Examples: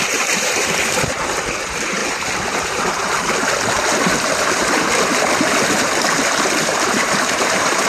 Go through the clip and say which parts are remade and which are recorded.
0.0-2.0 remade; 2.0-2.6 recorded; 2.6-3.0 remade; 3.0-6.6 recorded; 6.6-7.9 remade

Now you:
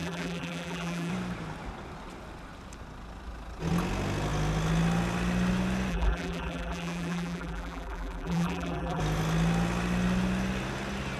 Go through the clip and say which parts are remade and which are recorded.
0.0-1.1 remade; 1.1-5.9 recorded; 5.9-9.0 remade; 9.0-11.2 recorded

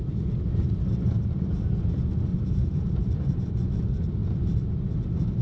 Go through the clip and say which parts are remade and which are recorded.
0.0-1.1 recorded; 1.1-1.8 remade; 1.8-2.3 recorded; 2.3-3.5 remade; 3.5-5.4 recorded

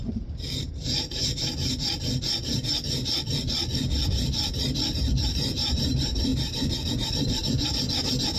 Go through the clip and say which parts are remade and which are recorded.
0.0-1.2 remade; 1.2-5.2 recorded; 5.2-6.3 remade; 6.3-6.9 recorded; 6.9-7.4 remade; 7.4-8.4 recorded

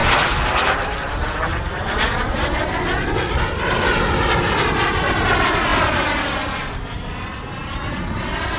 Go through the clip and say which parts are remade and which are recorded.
0.0-5.7 recorded; 5.7-6.3 remade; 6.3-7.6 recorded; 7.6-8.6 remade

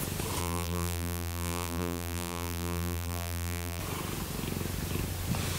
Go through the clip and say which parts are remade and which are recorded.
0.0-0.4 recorded; 0.4-3.8 remade; 3.8-5.6 recorded

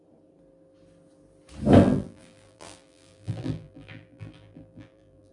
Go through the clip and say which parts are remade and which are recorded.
0.0-1.8 recorded; 1.8-5.3 remade

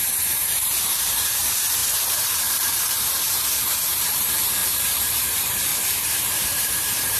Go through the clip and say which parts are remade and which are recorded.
0.0-5.7 remade; 5.7-6.2 recorded; 6.2-7.2 remade